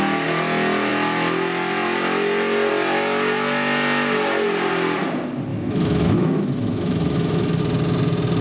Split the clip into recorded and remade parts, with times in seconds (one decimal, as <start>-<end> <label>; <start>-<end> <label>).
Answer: 0.0-5.5 recorded; 5.5-7.6 remade; 7.6-8.4 recorded